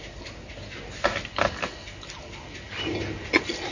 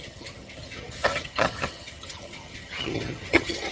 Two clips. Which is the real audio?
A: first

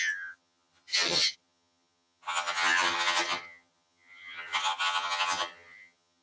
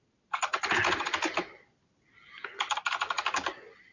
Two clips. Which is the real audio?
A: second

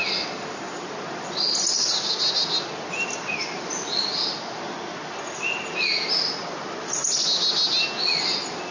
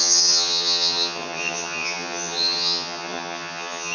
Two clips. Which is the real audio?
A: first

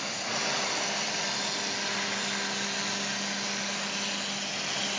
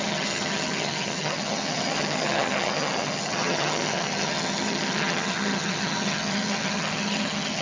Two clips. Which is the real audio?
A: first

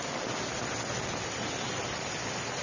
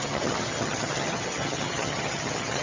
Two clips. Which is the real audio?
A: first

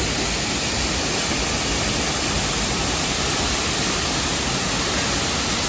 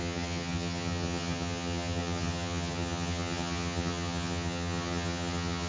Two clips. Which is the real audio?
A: first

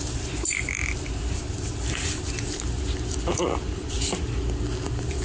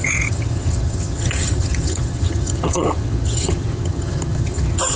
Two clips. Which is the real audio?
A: first